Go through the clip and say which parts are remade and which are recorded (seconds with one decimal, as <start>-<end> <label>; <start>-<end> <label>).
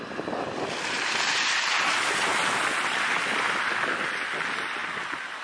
0.0-5.4 recorded